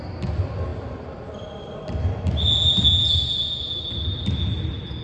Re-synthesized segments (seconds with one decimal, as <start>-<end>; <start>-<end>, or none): none